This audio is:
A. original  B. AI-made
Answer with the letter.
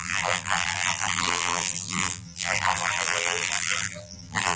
B